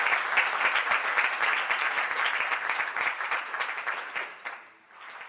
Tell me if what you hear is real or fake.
real